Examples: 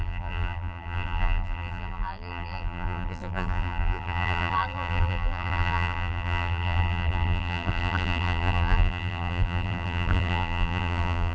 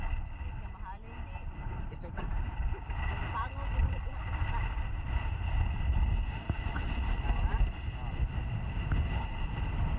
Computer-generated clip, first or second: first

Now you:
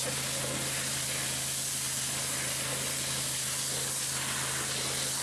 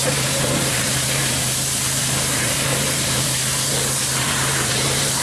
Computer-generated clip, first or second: second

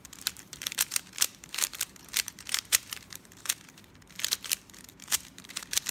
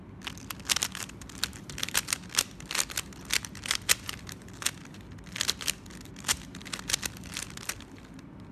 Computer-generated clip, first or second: first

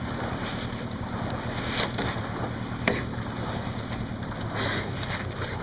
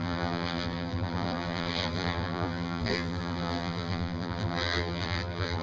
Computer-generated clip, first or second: second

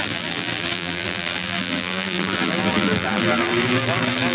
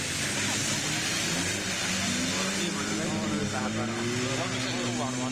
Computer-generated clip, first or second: first